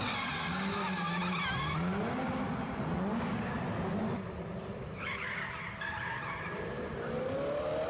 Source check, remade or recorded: recorded